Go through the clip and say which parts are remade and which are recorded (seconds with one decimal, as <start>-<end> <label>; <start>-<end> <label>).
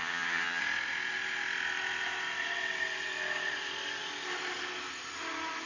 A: 0.0-0.6 remade; 0.6-5.7 recorded